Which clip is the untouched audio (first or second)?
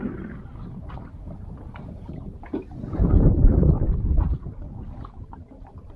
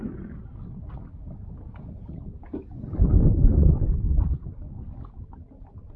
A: second